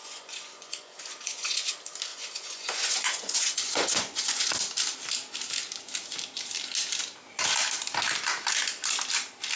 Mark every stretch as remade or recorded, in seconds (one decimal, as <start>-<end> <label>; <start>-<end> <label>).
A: 0.0-1.7 remade; 1.7-2.1 recorded; 2.1-4.5 remade; 4.5-9.6 recorded